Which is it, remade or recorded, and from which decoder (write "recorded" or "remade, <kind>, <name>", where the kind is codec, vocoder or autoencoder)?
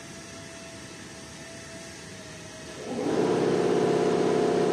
recorded